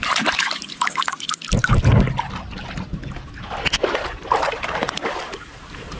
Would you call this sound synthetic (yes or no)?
no